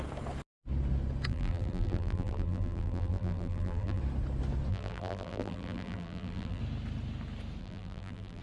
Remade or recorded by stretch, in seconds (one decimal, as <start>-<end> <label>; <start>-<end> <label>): 0.0-1.3 recorded; 1.3-4.0 remade; 4.0-4.7 recorded; 4.7-6.6 remade; 6.6-7.6 recorded; 7.6-8.4 remade